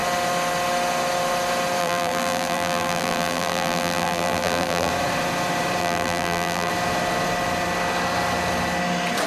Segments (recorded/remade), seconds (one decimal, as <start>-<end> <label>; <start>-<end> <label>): 0.0-1.8 recorded; 1.8-4.9 remade; 4.9-5.8 recorded; 5.8-6.7 remade; 6.7-9.3 recorded